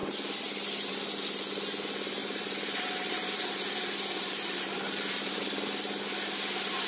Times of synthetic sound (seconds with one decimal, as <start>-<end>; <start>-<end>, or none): 2.2-5.4

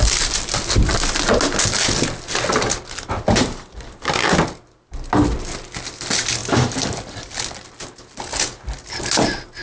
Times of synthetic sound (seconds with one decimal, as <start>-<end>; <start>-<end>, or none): 6.4-7.4

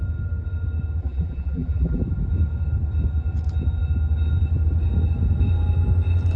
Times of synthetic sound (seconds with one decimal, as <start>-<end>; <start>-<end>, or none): 1.0-2.0

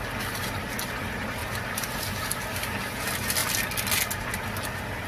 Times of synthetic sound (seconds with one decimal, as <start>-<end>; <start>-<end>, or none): none

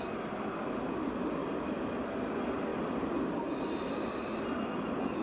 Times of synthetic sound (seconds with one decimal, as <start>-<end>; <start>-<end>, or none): 1.4-2.0; 2.7-4.6